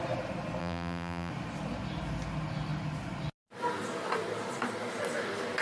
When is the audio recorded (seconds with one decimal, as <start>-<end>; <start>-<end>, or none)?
0.0-0.6; 1.3-5.6